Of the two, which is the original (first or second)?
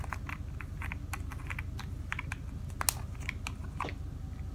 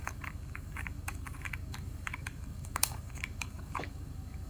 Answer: first